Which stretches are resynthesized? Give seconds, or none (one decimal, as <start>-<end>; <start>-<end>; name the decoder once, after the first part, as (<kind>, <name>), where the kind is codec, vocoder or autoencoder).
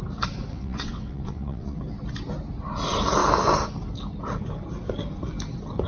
0.5-1.8 (vocoder, WaveNeXt)